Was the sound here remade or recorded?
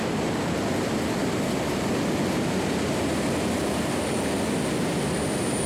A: recorded